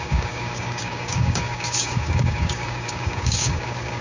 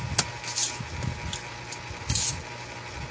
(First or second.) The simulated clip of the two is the first